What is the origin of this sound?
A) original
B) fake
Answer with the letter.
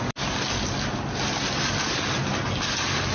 A